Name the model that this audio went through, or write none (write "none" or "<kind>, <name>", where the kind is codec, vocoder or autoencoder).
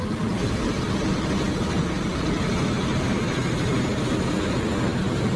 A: none